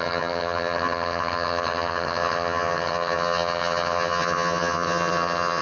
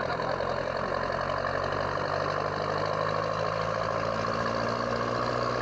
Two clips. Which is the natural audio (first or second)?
second